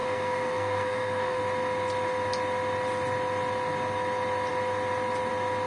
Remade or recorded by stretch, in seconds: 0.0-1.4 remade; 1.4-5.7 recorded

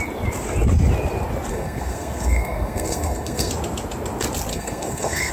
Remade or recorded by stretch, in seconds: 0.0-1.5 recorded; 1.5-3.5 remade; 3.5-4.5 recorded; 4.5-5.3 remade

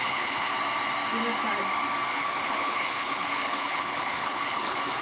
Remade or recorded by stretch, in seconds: 0.0-0.5 remade; 0.5-2.1 recorded; 2.1-5.0 remade

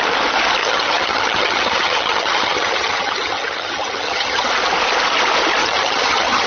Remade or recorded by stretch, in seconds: 0.0-0.6 recorded; 0.6-4.5 remade; 4.5-5.6 recorded; 5.6-6.5 remade